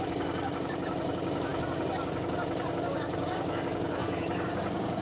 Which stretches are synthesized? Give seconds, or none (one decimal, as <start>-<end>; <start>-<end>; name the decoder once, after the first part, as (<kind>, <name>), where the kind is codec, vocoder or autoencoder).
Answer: 0.0-5.0 (codec, DAC)